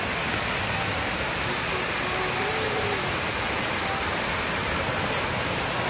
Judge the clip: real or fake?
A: real